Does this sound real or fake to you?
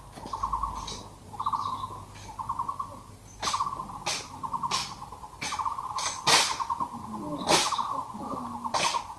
real